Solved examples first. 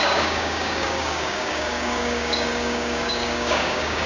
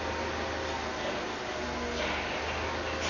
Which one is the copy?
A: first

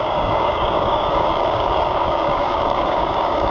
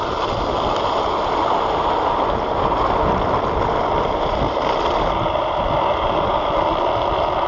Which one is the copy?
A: first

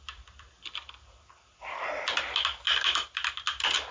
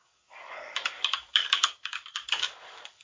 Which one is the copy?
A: second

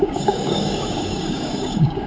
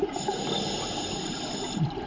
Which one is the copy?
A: first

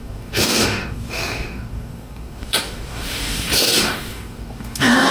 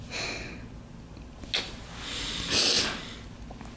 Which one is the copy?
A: first